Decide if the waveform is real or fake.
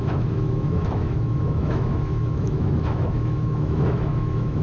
fake